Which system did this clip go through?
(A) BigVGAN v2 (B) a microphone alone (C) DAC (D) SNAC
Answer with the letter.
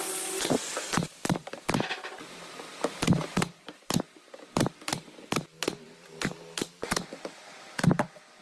A